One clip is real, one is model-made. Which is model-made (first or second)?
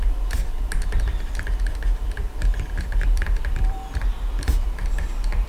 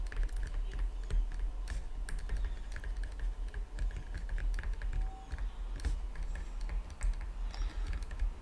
first